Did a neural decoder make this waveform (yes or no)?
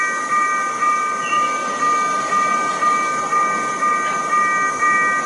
no